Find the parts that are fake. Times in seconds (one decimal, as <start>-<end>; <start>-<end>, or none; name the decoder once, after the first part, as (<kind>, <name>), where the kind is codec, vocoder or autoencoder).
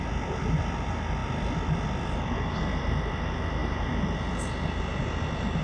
none